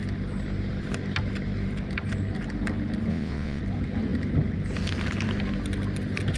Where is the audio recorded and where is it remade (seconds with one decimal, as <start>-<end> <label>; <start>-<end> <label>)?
0.0-3.1 recorded; 3.1-3.6 remade; 3.6-6.4 recorded